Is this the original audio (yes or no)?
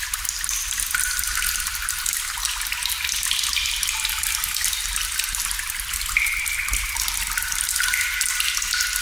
yes